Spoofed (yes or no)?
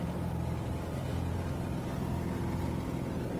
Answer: yes